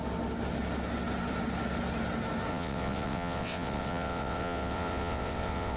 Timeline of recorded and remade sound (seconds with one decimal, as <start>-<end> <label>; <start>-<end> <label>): 0.0-2.5 recorded; 2.5-5.8 remade